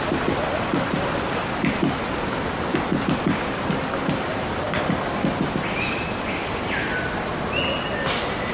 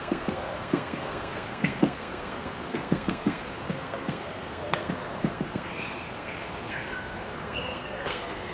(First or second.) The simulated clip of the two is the second